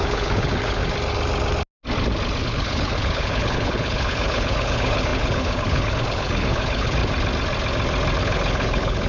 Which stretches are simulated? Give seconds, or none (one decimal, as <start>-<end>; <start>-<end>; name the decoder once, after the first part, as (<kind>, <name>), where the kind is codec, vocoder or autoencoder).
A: 0.0-0.8 (codec, HILCodec); 2.4-7.0; 8.2-9.1